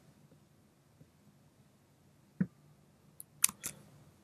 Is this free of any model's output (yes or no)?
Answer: yes